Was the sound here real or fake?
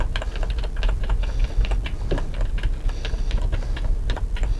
real